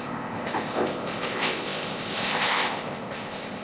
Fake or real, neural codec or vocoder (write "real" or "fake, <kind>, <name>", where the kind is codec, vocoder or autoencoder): fake, codec, ZipCodec